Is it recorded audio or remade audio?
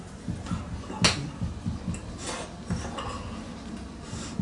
recorded